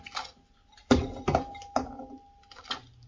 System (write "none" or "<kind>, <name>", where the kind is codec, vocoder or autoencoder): none